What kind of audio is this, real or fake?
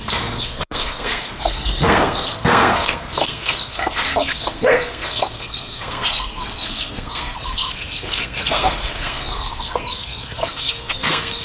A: fake